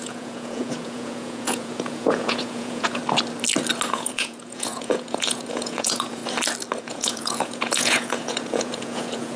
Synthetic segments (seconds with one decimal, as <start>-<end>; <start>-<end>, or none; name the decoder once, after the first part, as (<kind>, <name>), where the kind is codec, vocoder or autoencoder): 0.0-3.0 (vocoder, Vocos); 3.9-6.2; 6.8-9.4